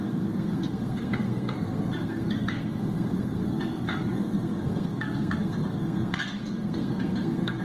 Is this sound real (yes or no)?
no